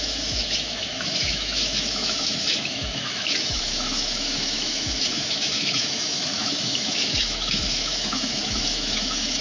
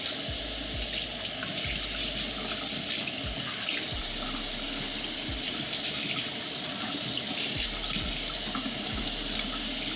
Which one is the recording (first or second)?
second